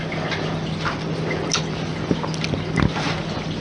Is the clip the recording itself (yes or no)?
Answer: yes